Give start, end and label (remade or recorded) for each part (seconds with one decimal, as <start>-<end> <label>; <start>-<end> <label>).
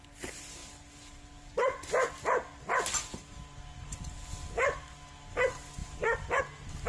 0.0-6.9 recorded